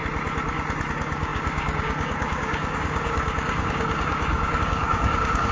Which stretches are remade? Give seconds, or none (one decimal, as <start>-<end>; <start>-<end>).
0.9-5.5